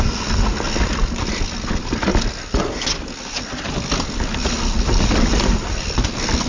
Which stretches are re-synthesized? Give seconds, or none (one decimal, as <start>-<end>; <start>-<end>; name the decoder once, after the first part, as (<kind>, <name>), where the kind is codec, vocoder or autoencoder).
none